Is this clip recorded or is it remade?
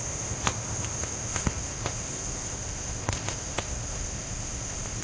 remade